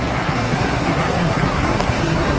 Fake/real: fake